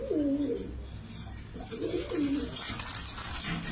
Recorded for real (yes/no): yes